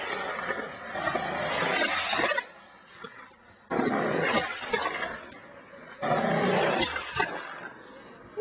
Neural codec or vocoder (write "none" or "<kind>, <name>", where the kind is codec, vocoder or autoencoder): none